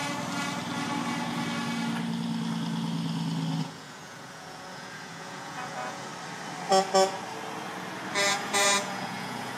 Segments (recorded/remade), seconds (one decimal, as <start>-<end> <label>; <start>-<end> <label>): 0.0-3.6 recorded; 3.6-6.1 remade; 6.1-8.3 recorded; 8.3-9.6 remade